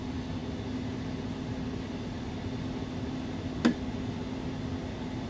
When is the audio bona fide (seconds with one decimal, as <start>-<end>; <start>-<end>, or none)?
0.0-5.3